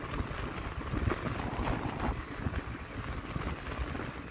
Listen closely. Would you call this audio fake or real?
real